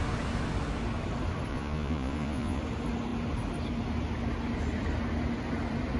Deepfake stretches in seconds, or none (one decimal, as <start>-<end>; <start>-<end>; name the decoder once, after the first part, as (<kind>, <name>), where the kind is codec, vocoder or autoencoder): 1.5-2.6 (vocoder, Vocos)